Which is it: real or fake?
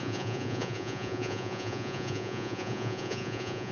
fake